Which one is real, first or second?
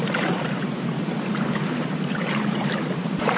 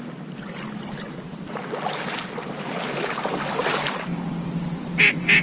second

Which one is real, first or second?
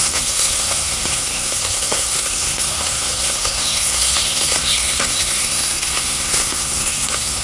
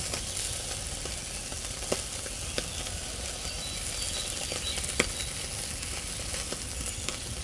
second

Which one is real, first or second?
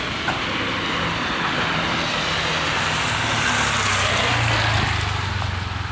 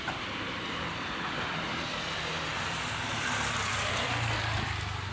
first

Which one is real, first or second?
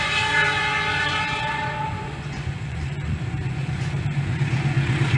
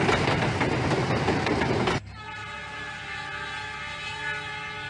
second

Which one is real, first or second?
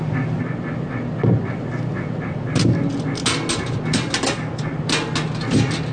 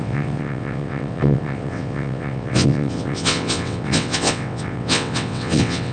first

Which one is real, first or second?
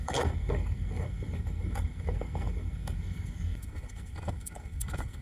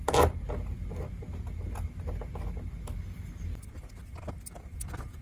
second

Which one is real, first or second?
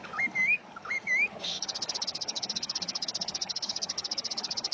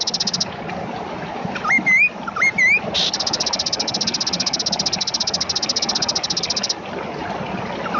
second